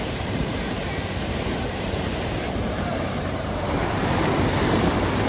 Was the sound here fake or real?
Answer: fake